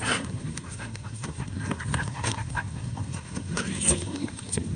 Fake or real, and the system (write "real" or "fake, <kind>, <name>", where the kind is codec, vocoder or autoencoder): fake, codec, SNAC